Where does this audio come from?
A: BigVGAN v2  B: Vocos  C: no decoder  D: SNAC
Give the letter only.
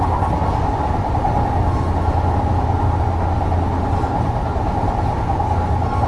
C